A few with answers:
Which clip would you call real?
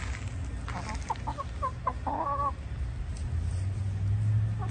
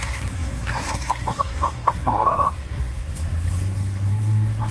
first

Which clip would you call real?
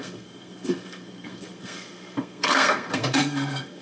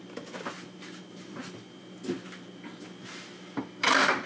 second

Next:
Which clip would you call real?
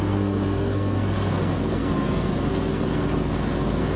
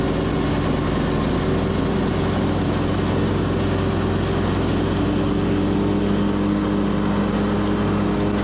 second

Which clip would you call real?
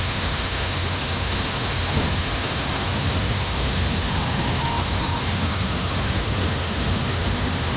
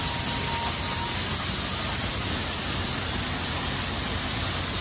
second